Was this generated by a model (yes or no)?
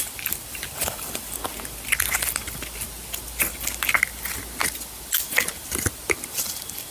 no